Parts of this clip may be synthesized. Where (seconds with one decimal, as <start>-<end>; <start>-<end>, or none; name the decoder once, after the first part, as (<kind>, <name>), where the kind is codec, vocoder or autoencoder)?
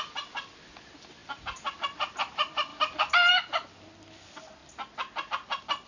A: 1.2-1.8 (vocoder, BigVGAN v2); 2.7-3.3